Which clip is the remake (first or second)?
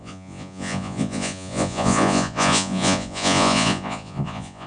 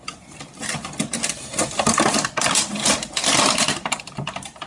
first